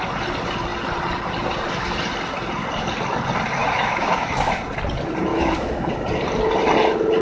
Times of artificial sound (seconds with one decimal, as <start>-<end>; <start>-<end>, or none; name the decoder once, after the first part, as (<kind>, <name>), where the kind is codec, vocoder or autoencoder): 3.6-4.6 (autoencoder, DAC-VAE); 5.3-5.9